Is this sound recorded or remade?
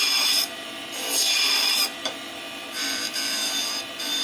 remade